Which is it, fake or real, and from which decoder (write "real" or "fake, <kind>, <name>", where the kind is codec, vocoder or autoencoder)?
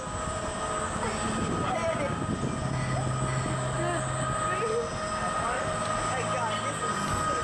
real